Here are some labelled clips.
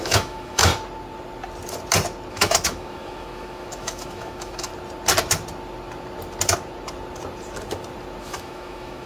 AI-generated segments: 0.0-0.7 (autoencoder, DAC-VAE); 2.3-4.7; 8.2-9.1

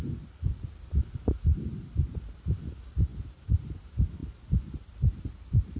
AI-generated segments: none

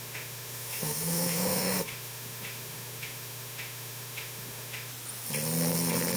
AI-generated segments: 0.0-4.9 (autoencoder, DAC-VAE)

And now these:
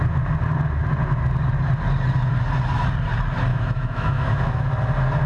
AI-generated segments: 3.5-4.7 (autoencoder, DAC-VAE)